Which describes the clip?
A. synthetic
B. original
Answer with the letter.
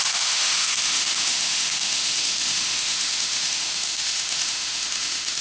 A